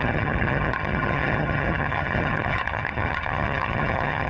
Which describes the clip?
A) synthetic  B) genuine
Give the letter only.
A